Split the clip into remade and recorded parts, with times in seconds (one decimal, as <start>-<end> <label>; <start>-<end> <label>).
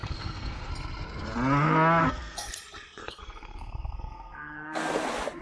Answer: 0.0-0.7 remade; 0.7-2.0 recorded; 2.0-2.5 remade; 2.5-3.0 recorded; 3.0-4.8 remade; 4.8-5.4 recorded